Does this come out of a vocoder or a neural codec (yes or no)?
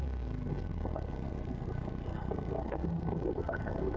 yes